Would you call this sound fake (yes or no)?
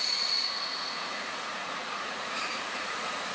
yes